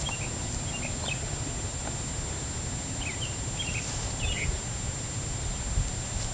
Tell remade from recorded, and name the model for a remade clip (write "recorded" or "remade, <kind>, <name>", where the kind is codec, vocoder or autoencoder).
recorded